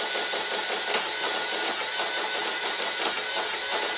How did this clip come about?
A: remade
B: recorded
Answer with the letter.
B